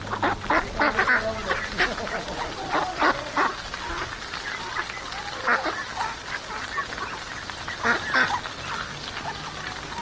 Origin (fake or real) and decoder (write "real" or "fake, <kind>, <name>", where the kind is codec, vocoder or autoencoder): real